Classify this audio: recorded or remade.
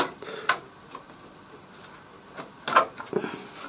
recorded